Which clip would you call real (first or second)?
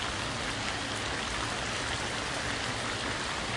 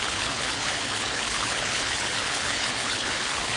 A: first